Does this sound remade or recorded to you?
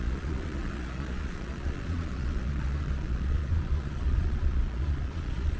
remade